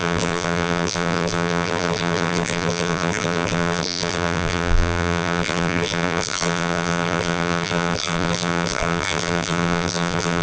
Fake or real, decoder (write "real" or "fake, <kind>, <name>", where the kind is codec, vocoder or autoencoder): fake, vocoder, BigVGAN v2